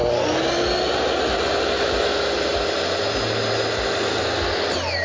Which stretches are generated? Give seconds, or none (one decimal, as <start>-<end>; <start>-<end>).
none